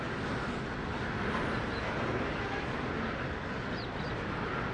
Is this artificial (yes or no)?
no